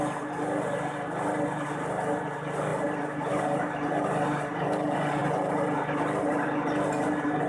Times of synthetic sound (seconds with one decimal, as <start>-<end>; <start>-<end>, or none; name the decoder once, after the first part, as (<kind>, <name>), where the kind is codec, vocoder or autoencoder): none